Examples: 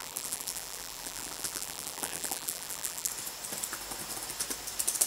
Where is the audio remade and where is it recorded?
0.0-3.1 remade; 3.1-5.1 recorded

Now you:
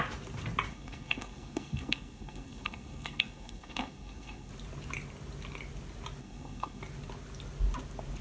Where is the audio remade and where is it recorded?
0.0-0.7 recorded; 0.7-4.5 remade; 4.5-6.2 recorded; 6.2-6.8 remade; 6.8-8.2 recorded

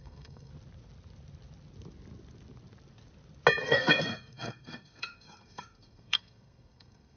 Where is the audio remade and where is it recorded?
0.0-0.5 remade; 0.5-3.6 recorded; 3.6-7.2 remade

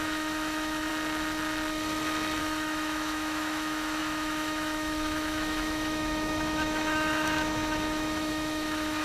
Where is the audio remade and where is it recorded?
0.0-0.9 remade; 0.9-2.4 recorded; 2.4-9.0 remade

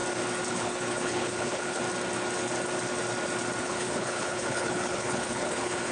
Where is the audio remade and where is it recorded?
0.0-0.5 recorded; 0.5-1.8 remade; 1.8-3.6 recorded; 3.6-5.9 remade

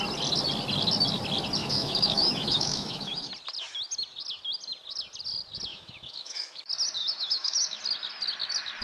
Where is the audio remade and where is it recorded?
0.0-1.6 recorded; 1.6-3.3 remade; 3.3-5.7 recorded; 5.7-6.6 remade; 6.6-7.0 recorded; 7.0-7.8 remade; 7.8-8.8 recorded

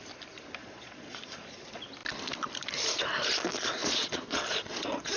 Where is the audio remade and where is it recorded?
0.0-0.6 recorded; 0.6-1.2 remade; 1.2-3.8 recorded; 3.8-5.2 remade

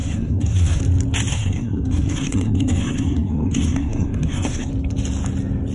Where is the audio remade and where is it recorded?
0.0-0.8 remade; 0.8-1.3 recorded; 1.3-4.7 remade; 4.7-5.7 recorded